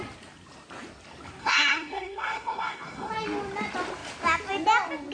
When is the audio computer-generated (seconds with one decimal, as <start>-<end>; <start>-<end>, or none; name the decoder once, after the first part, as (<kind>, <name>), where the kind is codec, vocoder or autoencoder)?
1.4-3.1 (codec, SNAC)